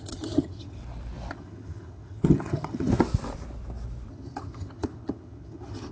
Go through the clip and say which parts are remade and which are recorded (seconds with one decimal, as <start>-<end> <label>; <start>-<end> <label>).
0.0-0.8 remade; 0.8-1.3 recorded; 1.3-2.9 remade; 2.9-4.1 recorded; 4.1-5.9 remade